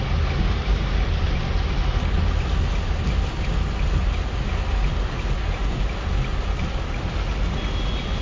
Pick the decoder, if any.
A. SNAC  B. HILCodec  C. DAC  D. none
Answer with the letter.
D